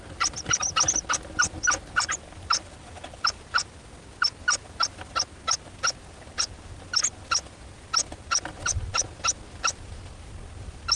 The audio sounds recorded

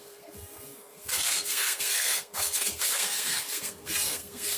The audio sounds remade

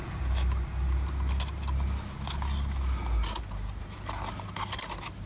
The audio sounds recorded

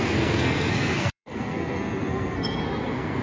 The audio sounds remade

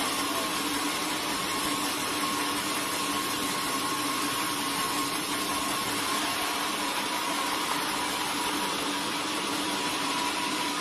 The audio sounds recorded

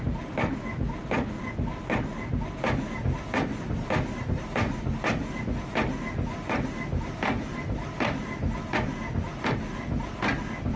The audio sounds recorded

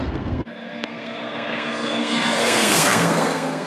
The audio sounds remade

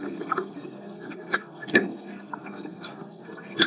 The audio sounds remade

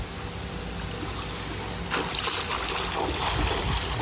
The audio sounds recorded